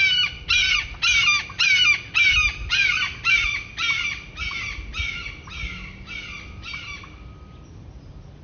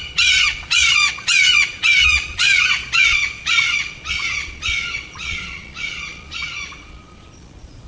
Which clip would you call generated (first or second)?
second